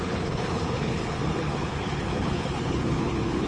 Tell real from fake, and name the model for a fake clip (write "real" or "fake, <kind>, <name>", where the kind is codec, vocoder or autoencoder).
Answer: fake, codec, HILCodec